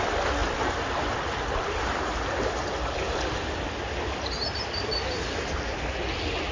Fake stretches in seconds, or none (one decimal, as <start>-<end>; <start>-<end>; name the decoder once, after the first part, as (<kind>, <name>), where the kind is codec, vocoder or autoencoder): none